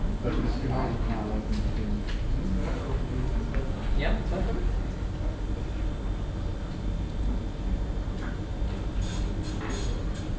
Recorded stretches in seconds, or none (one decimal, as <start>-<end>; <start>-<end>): 0.0-10.4